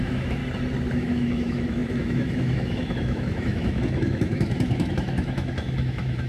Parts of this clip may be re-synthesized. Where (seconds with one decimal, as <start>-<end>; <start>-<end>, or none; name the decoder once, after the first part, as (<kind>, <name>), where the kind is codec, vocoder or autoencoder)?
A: 0.0-0.4 (autoencoder, DAC-VAE); 0.9-6.3